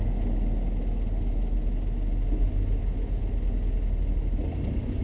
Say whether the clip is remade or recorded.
recorded